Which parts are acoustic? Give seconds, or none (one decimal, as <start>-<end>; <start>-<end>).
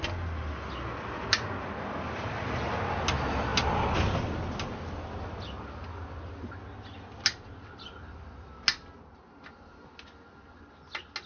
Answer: 0.0-11.3